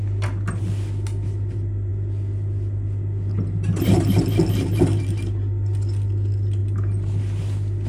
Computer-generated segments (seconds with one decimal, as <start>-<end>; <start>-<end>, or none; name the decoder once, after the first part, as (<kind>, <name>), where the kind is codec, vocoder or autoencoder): none